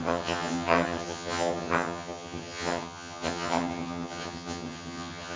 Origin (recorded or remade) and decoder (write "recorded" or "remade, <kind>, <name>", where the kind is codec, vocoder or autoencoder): remade, vocoder, HiFi-GAN